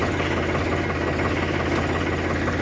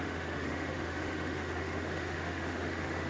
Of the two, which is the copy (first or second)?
second